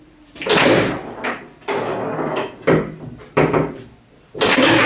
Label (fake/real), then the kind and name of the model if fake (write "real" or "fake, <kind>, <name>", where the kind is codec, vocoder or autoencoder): fake, vocoder, BigVGAN v2